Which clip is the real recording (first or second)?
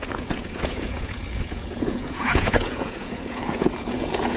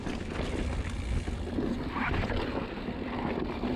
second